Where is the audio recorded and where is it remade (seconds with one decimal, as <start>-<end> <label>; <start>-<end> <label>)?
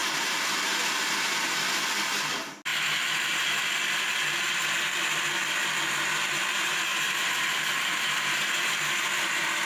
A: 0.0-0.7 remade; 0.7-6.9 recorded; 6.9-7.4 remade; 7.4-9.6 recorded